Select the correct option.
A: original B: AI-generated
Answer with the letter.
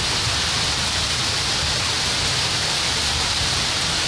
A